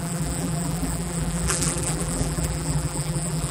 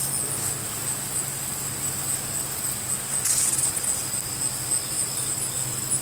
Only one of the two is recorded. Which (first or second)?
second